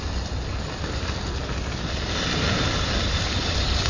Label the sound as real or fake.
real